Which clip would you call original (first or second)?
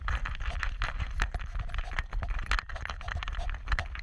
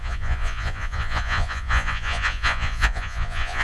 first